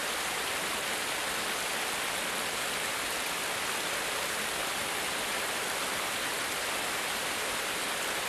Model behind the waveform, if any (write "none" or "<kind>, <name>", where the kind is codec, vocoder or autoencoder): none